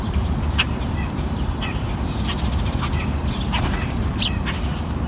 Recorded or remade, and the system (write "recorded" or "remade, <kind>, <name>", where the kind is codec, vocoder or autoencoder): remade, vocoder, BigVGAN v2